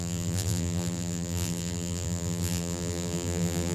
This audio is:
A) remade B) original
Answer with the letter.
A